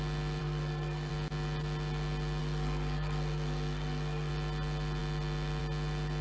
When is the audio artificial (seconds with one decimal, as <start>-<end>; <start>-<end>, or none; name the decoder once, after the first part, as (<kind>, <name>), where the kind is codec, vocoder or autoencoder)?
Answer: 0.4-1.1 (codec, SNAC); 2.4-4.3